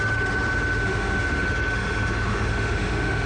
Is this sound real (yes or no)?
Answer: no